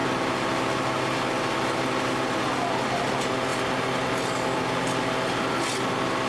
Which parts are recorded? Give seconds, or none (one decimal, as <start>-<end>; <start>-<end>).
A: 0.0-6.3